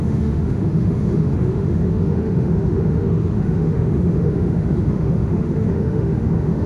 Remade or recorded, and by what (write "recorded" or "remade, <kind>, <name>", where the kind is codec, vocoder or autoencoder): remade, autoencoder, DAC-VAE